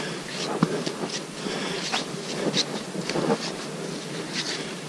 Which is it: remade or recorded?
recorded